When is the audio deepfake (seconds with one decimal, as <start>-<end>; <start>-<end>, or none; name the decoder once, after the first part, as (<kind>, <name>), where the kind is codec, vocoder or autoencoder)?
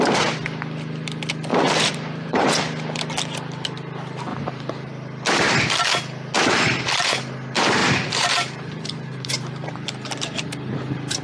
1.5-2.5 (vocoder, BigVGAN v2); 4.3-4.9; 7.8-10.4